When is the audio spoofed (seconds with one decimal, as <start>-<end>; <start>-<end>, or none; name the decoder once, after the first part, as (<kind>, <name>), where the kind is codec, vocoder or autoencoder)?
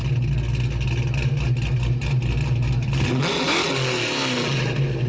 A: none